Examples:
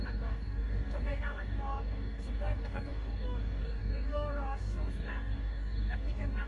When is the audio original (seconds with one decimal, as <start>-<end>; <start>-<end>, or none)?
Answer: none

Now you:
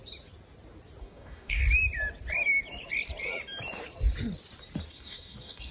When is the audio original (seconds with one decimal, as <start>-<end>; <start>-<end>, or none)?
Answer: 0.0-1.0; 1.6-4.9

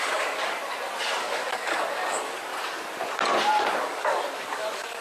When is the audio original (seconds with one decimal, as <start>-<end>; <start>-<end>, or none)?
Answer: 0.6-1.2; 2.5-3.7

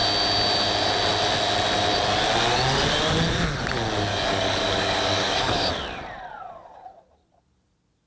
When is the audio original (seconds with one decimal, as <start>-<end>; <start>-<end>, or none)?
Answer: 0.0-4.1; 5.7-8.1

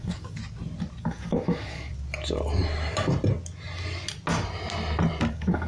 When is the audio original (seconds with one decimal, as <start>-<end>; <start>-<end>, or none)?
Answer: 0.4-1.0; 1.9-5.3